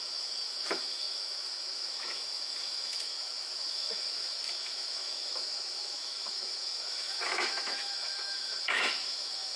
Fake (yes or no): yes